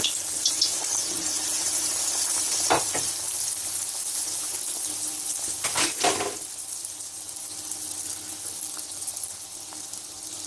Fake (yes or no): no